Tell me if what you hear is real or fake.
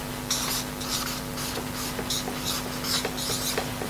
real